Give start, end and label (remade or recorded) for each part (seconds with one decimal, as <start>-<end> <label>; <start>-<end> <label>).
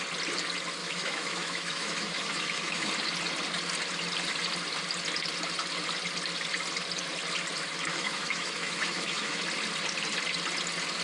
0.0-0.8 recorded; 0.8-2.9 remade; 2.9-7.9 recorded; 7.9-9.4 remade; 9.4-11.0 recorded